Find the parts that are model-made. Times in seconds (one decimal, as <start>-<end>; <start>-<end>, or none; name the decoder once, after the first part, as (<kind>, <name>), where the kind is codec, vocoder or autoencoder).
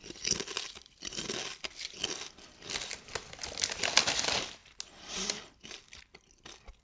none